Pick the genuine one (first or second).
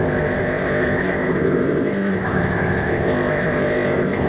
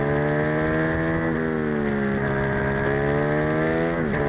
second